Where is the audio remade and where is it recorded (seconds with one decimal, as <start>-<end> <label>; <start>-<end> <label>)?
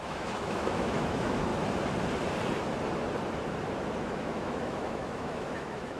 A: 0.0-1.5 remade; 1.5-4.0 recorded; 4.0-6.0 remade